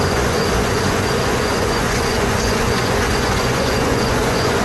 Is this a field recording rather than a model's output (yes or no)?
no